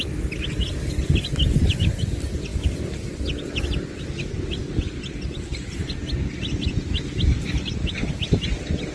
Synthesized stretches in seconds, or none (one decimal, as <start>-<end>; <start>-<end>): none